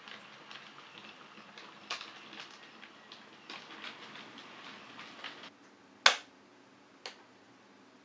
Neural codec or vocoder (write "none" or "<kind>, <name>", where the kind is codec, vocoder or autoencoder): none